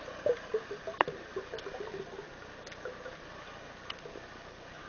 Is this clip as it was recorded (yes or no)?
yes